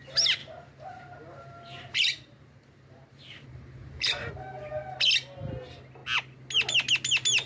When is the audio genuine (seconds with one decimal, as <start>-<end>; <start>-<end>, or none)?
0.0-0.4; 4.3-7.5